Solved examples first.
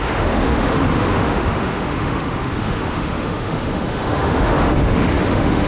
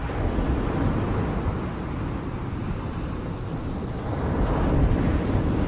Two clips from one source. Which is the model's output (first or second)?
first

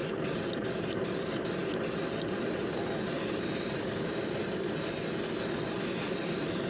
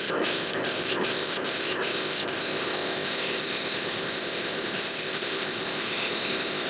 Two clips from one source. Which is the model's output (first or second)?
second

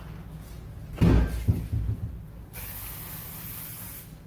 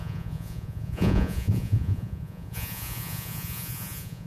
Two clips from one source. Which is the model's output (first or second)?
second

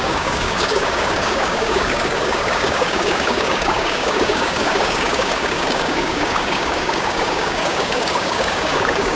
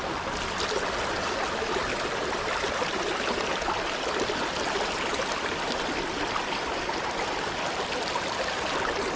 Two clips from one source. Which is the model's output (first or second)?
first